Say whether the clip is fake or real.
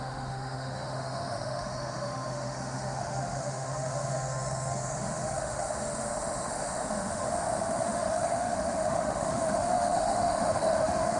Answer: fake